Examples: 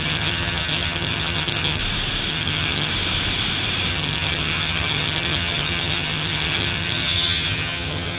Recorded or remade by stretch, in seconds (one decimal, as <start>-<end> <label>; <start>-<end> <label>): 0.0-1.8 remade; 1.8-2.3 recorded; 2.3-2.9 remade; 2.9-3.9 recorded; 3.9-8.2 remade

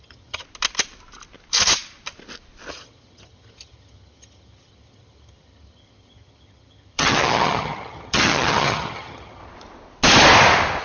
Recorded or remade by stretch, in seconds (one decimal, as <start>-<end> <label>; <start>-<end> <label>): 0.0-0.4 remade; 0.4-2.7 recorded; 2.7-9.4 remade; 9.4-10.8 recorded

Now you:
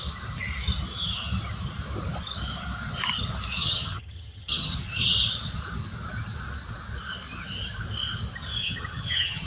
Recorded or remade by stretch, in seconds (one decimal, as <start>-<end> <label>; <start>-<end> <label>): 0.0-3.6 recorded; 3.6-4.7 remade; 4.7-8.6 recorded; 8.6-9.5 remade